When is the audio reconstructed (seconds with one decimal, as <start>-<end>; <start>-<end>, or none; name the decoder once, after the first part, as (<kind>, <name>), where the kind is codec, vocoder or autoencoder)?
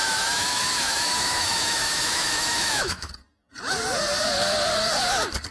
0.0-3.1 (autoencoder, DAC-VAE)